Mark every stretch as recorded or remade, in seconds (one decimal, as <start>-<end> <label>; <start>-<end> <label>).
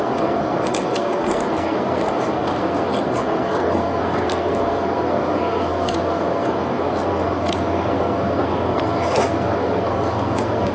0.0-10.7 remade